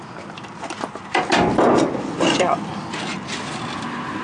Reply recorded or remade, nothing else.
recorded